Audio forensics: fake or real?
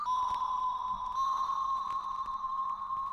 real